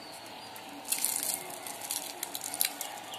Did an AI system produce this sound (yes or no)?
no